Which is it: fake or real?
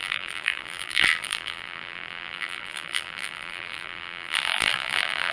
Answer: fake